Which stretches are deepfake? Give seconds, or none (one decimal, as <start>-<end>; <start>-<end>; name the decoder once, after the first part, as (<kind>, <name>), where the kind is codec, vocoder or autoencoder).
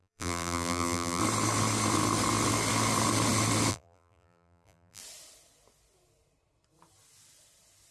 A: 0.0-1.2 (vocoder, BigVGAN v2); 3.7-5.0